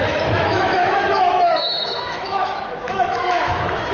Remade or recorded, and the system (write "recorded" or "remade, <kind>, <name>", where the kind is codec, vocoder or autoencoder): remade, autoencoder, DAC-VAE